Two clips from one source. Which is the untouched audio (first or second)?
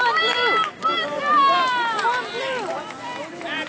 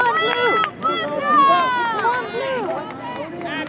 second